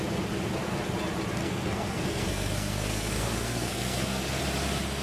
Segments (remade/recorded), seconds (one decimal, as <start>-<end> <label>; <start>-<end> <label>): 0.0-1.4 recorded; 1.4-4.4 remade; 4.4-5.0 recorded